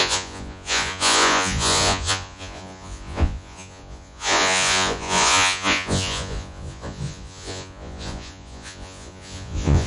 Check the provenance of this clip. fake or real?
fake